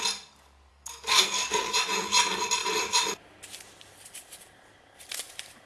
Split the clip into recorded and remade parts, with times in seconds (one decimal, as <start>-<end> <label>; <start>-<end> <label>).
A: 0.0-0.7 recorded; 0.7-1.7 remade; 1.7-5.7 recorded